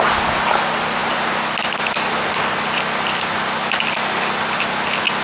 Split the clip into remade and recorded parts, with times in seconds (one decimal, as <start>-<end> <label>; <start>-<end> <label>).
0.0-5.2 recorded